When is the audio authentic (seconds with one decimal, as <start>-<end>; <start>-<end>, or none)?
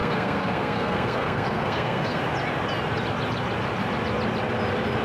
2.2-5.0